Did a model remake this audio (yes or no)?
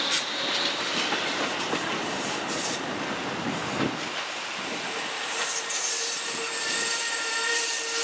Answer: yes